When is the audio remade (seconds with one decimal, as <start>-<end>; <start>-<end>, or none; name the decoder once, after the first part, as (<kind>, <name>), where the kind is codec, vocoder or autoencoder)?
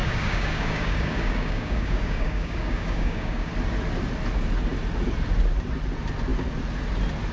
0.0-3.5 (codec, DAC)